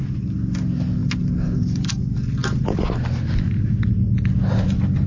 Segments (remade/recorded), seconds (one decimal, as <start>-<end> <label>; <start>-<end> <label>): 0.0-5.1 recorded